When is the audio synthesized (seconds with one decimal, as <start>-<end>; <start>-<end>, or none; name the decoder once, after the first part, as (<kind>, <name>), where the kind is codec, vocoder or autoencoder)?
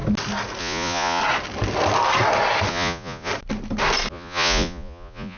0.6-1.2 (vocoder, Vocos); 2.7-3.3; 4.1-5.4